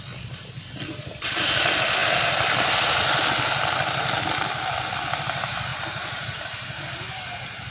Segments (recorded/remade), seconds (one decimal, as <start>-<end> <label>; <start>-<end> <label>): 0.0-5.7 recorded; 5.7-6.8 remade; 6.8-7.7 recorded